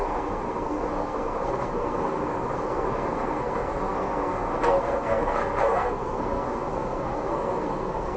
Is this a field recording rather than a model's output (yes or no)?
no